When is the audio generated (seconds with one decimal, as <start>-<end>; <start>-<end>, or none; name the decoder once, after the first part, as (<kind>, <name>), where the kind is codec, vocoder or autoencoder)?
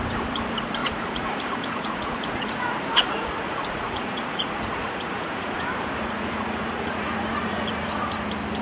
0.8-5.6 (vocoder, Vocos); 6.0-8.2